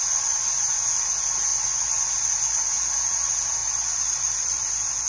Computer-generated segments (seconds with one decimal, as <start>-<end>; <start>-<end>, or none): 1.5-2.1